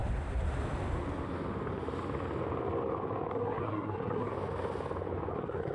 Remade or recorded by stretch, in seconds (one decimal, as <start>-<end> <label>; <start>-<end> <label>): 0.0-3.3 recorded; 3.3-4.3 remade; 4.3-5.3 recorded; 5.3-5.7 remade